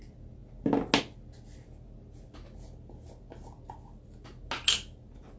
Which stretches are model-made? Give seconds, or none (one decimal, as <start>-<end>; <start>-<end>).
none